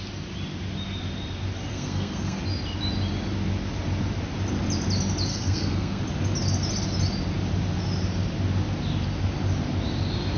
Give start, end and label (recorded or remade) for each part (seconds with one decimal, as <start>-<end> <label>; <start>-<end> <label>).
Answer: 0.0-1.7 recorded; 1.7-2.4 remade; 2.4-5.3 recorded; 5.3-6.0 remade; 6.0-10.4 recorded

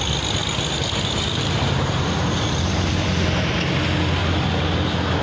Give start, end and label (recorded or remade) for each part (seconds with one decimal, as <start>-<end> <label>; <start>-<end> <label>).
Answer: 0.0-0.4 recorded; 0.4-3.5 remade; 3.5-5.2 recorded

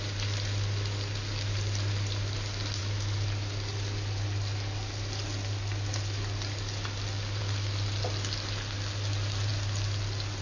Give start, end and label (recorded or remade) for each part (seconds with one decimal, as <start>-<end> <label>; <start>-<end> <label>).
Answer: 0.0-10.4 recorded

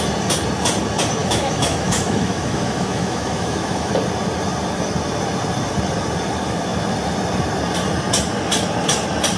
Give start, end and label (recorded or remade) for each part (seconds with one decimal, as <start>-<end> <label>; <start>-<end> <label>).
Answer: 0.0-1.2 recorded; 1.2-3.9 remade; 3.9-9.4 recorded